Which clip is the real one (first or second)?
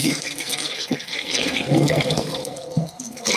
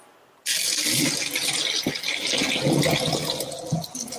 second